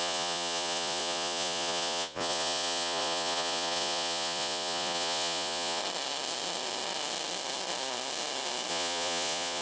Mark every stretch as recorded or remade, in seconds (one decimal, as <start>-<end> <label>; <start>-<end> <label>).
0.0-5.8 remade; 5.8-8.7 recorded; 8.7-9.6 remade